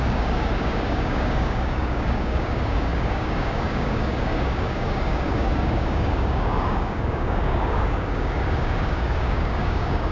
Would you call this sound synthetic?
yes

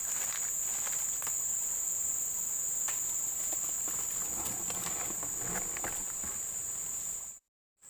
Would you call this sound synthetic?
no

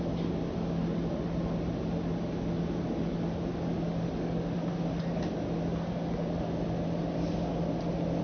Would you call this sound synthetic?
no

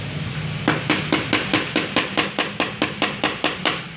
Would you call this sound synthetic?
no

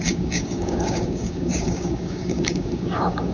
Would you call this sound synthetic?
yes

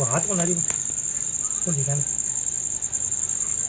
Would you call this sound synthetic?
no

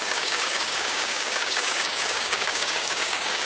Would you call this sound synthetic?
yes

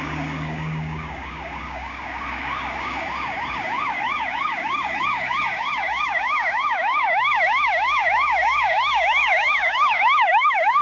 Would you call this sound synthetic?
yes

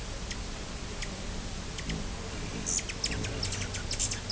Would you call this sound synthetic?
no